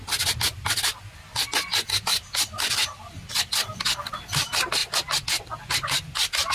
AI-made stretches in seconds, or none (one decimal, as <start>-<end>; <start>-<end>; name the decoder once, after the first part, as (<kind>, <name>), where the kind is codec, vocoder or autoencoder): 2.1-4.1 (vocoder, BigVGAN v2)